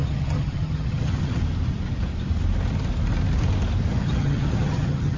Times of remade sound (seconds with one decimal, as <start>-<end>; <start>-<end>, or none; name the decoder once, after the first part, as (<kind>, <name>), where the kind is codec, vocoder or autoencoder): 0.0-1.4 (vocoder, HiFi-GAN); 3.9-5.2